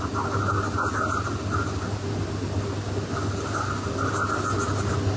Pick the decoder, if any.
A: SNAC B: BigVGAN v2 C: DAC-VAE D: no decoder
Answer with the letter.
D